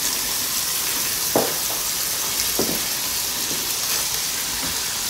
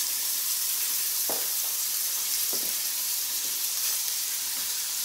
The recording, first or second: first